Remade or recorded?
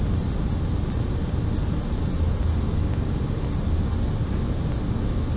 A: recorded